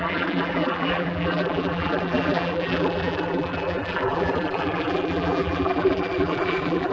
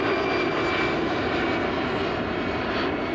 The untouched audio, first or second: second